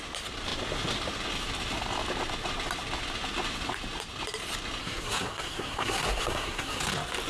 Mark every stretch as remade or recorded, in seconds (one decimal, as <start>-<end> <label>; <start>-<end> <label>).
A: 0.0-4.8 recorded; 4.8-6.8 remade; 6.8-7.3 recorded